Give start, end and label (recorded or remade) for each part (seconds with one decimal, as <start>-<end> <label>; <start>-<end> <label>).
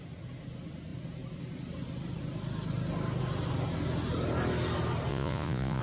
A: 0.0-5.1 recorded; 5.1-5.8 remade